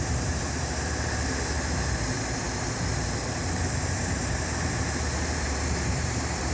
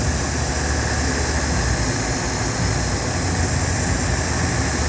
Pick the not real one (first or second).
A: first